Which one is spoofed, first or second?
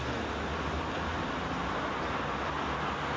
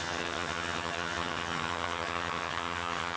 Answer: second